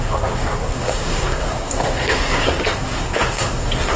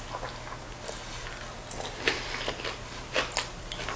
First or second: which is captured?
second